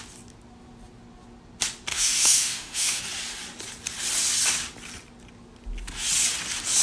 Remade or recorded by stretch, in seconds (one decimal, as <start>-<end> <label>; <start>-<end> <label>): 0.0-1.9 recorded; 1.9-3.0 remade; 3.0-6.8 recorded